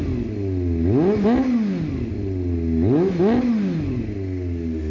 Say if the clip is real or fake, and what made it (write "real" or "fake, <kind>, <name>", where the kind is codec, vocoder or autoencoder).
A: real